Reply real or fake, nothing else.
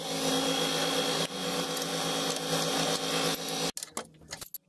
real